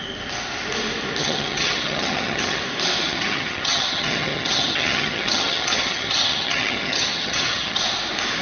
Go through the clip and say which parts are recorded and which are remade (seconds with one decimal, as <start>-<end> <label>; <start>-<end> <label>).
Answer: 0.0-1.2 recorded; 1.2-2.6 remade; 2.6-3.0 recorded; 3.0-7.8 remade; 7.8-8.4 recorded